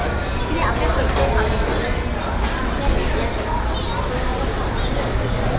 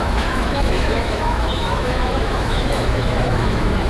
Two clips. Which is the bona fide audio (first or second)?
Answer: first